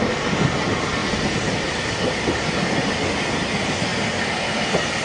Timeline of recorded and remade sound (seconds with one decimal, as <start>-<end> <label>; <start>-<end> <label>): 0.0-5.0 recorded